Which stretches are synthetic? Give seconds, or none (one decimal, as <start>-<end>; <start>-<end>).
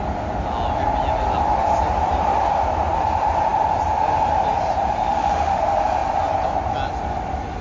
5.0-5.6